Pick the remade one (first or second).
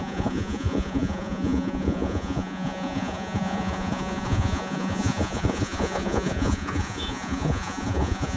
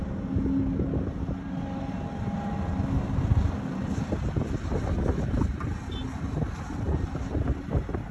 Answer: first